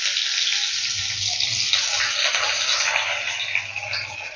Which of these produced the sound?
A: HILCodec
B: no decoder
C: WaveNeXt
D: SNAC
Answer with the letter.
B